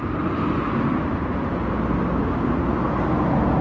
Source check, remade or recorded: recorded